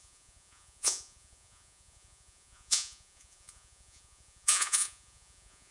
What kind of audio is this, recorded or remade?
remade